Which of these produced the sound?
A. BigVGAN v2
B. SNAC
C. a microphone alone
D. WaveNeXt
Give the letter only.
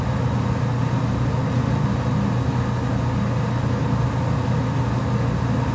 C